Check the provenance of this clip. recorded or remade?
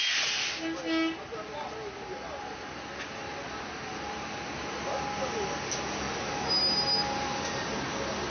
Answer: recorded